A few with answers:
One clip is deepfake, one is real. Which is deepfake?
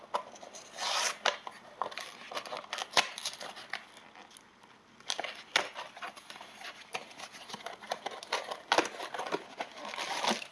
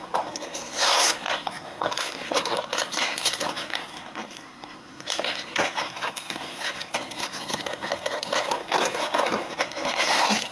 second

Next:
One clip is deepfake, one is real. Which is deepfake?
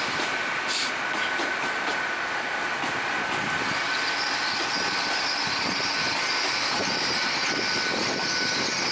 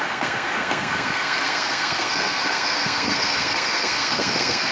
second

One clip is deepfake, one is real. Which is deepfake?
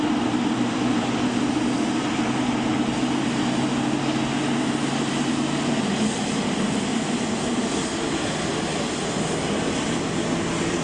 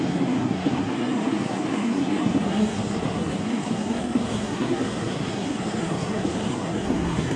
second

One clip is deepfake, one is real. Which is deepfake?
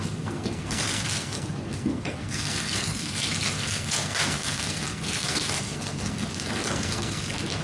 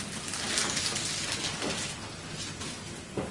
first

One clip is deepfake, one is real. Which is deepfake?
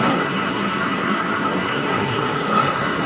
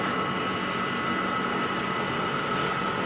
first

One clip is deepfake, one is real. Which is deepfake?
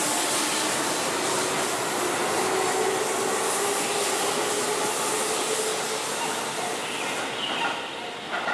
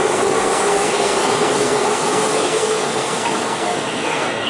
second